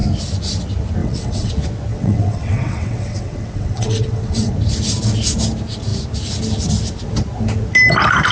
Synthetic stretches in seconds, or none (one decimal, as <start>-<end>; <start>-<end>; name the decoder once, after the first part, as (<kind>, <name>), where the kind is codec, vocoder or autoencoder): 1.0-1.5 (vocoder, WaveNeXt); 1.9-4.5